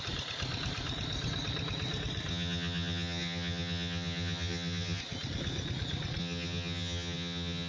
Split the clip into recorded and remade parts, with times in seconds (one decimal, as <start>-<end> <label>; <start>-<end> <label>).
0.0-2.3 recorded; 2.3-5.0 remade; 5.0-6.2 recorded; 6.2-7.7 remade